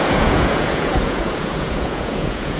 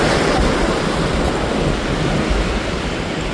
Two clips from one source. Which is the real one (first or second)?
second